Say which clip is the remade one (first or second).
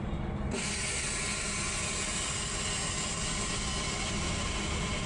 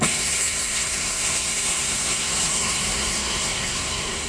second